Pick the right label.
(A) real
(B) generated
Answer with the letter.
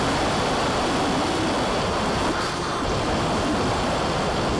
A